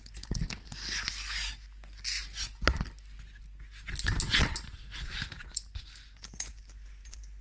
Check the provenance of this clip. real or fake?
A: real